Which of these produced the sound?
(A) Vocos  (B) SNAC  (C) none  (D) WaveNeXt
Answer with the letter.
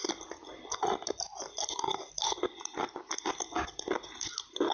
C